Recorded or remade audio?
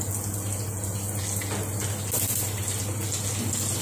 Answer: recorded